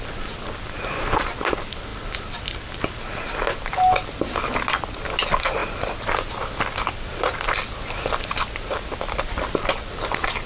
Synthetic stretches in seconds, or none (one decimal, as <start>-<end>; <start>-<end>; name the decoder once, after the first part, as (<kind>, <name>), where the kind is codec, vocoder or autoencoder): none